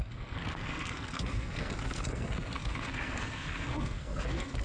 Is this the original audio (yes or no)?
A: no